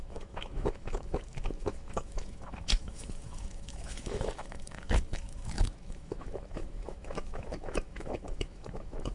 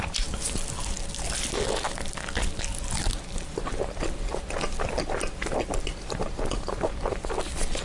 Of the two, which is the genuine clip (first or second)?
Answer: second